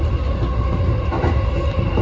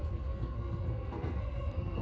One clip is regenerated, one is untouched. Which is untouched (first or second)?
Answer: first